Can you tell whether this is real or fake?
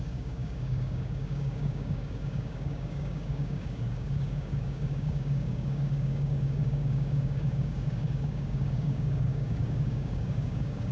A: fake